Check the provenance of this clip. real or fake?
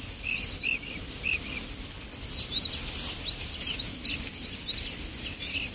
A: real